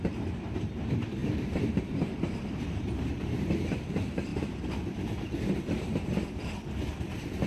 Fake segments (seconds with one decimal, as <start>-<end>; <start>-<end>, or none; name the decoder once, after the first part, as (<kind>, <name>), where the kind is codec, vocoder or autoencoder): 0.0-4.3 (vocoder, BigVGAN v2); 7.0-7.5